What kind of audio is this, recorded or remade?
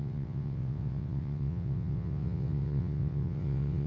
remade